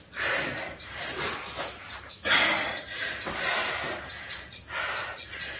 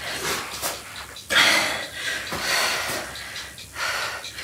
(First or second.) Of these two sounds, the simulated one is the first